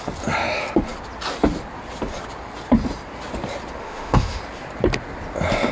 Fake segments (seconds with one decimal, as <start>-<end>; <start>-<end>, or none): 3.8-4.4